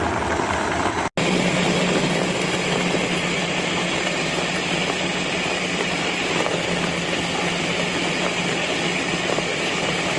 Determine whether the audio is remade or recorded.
recorded